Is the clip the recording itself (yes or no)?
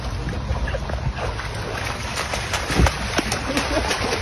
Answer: yes